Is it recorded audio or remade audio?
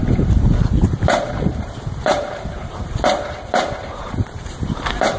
remade